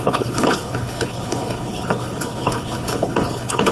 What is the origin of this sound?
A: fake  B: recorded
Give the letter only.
A